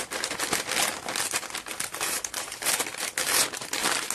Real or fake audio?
real